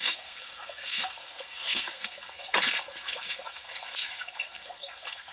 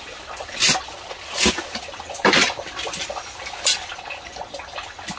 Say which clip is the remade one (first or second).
first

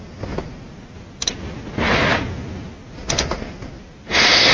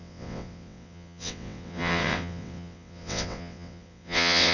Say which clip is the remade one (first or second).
second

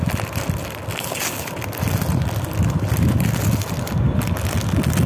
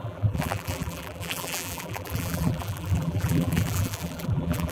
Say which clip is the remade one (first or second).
second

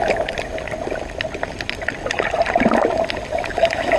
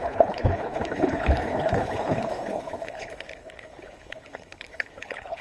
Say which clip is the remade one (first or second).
second